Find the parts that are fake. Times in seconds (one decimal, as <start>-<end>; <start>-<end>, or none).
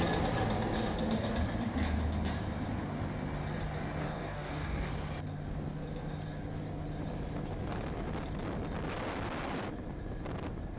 4.0-4.9